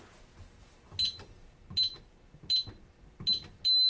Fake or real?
real